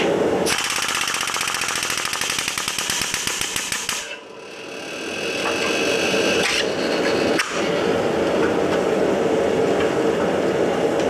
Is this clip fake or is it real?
real